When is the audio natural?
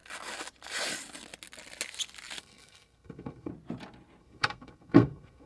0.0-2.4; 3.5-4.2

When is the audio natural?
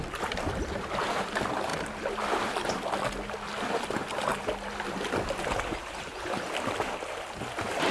0.0-7.9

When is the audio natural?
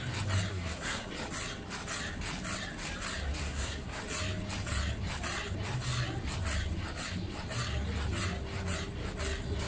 0.0-0.5; 1.1-3.4; 4.0-9.7